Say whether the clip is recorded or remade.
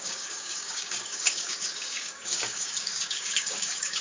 remade